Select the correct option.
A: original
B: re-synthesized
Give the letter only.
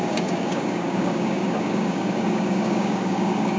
B